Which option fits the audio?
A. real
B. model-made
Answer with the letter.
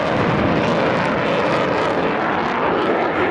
A